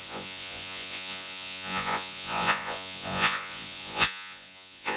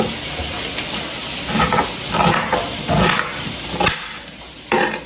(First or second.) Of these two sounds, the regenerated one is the first